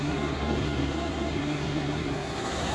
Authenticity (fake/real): fake